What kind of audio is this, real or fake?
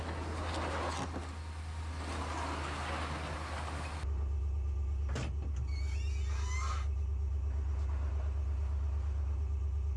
real